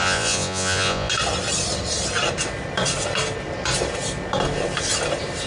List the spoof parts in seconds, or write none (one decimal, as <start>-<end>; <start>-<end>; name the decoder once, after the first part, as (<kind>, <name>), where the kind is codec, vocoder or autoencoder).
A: 0.0-1.1 (vocoder, Vocos)

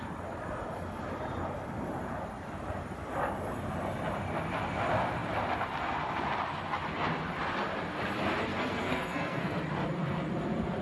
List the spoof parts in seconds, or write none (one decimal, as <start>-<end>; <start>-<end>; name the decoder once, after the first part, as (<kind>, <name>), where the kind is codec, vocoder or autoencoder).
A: 8.5-9.6 (codec, SNAC)